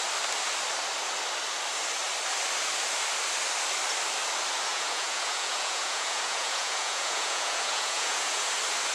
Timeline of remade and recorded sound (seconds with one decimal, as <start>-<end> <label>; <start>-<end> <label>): 0.0-4.7 recorded; 4.7-8.5 remade; 8.5-8.9 recorded